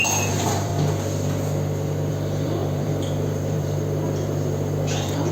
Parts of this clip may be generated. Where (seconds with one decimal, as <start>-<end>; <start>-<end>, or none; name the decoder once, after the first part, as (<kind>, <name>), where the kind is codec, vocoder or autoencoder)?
0.0-0.7 (vocoder, BigVGAN v2); 2.1-5.3